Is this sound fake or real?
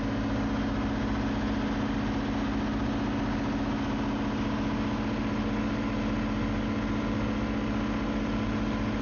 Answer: real